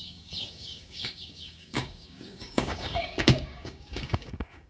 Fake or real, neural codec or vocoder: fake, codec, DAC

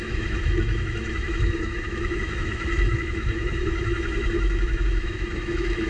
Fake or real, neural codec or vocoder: fake, autoencoder, DAC-VAE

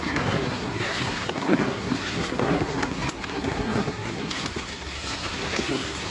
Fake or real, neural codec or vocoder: fake, codec, SNAC